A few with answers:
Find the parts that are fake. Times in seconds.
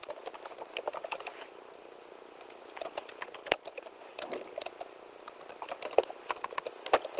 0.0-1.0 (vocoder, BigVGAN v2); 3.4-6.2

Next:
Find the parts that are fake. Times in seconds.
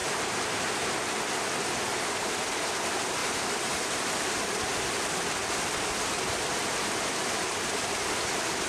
0.0-1.0 (vocoder, BigVGAN v2); 3.2-4.0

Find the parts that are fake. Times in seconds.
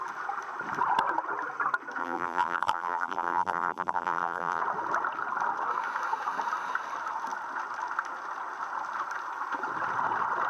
2.0-4.6 (vocoder, BigVGAN v2)